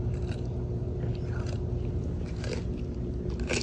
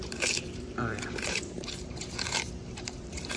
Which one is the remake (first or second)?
second